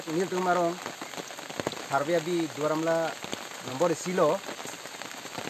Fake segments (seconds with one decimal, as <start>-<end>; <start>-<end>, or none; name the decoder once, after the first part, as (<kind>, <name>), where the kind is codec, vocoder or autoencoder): none